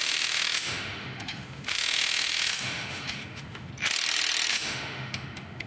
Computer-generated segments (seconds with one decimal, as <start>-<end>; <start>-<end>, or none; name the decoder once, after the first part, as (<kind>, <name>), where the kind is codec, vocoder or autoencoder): 0.0-3.7 (autoencoder, DAC-VAE); 4.5-5.7